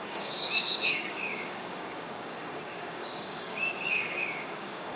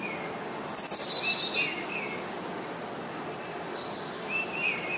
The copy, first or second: first